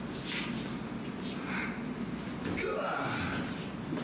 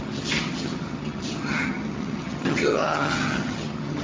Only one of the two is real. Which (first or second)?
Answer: first